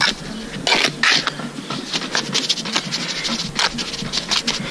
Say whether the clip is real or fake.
real